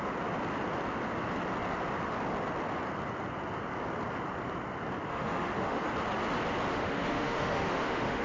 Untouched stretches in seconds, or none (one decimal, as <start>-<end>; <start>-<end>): 0.0-5.1; 5.9-6.7